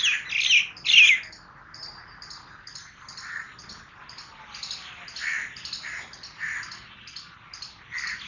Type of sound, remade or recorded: recorded